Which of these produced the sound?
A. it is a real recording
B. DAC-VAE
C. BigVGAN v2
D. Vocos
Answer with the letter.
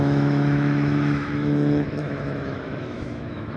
B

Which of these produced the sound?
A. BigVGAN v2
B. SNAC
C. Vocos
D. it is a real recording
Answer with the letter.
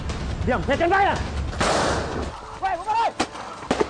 D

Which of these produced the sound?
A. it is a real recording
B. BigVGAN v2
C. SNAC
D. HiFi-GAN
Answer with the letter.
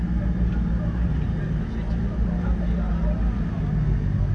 A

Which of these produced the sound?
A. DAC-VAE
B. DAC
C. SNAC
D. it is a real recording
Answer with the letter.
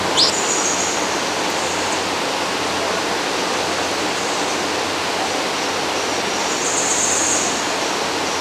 D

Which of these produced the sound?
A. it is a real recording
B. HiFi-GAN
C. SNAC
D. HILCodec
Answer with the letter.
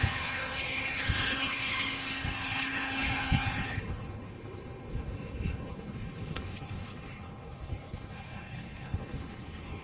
D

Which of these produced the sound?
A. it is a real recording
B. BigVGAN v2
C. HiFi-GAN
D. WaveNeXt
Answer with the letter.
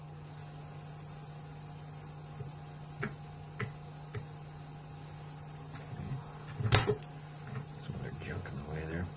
A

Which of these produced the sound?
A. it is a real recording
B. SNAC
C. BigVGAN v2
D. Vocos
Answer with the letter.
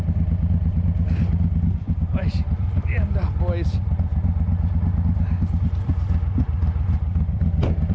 A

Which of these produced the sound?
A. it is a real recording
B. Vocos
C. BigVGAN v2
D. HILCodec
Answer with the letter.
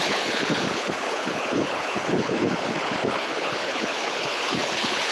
D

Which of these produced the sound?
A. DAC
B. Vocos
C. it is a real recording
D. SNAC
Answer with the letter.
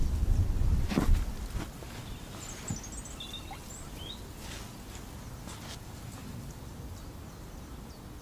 C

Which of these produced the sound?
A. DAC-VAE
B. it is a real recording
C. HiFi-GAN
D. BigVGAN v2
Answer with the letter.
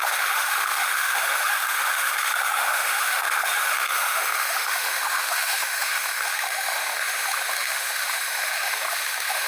A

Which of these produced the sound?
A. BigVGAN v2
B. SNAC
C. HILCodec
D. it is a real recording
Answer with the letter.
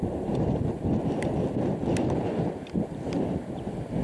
D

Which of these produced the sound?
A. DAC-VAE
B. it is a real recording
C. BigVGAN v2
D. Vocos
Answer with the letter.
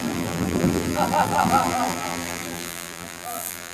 C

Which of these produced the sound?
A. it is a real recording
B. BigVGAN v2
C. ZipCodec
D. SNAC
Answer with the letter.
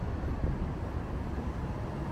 A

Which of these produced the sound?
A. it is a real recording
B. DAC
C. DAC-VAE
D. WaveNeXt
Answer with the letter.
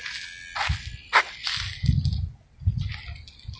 A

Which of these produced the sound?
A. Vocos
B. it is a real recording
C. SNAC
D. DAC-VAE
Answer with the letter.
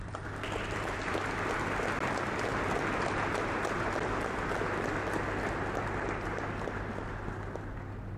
B